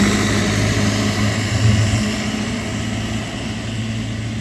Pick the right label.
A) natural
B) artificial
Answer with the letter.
A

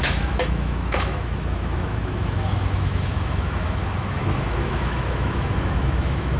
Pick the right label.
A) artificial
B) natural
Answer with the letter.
A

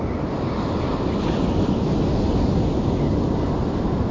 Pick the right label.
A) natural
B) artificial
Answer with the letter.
A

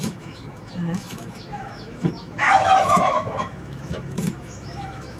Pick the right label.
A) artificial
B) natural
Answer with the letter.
A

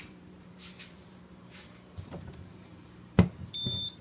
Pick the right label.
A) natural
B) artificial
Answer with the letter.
B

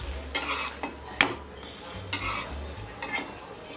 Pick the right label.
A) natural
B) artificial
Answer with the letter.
A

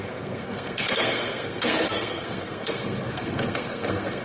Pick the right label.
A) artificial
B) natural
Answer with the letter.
A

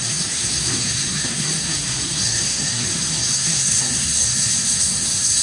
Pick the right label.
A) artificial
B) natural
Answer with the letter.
A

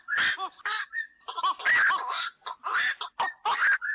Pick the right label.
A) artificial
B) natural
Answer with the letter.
B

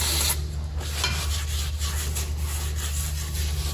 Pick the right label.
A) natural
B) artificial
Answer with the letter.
A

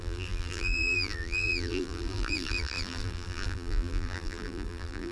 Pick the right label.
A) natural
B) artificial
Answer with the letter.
B